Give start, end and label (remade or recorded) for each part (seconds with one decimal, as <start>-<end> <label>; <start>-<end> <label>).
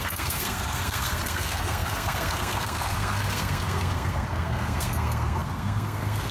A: 0.0-6.3 remade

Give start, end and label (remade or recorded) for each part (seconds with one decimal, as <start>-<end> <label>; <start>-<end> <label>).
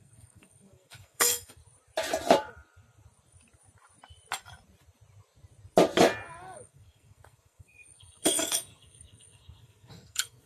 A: 0.0-1.6 remade; 1.6-6.4 recorded; 6.4-10.5 remade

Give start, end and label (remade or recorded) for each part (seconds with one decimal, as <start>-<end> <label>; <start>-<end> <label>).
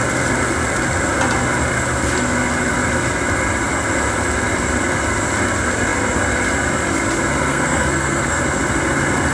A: 0.0-7.5 recorded; 7.5-8.4 remade; 8.4-9.3 recorded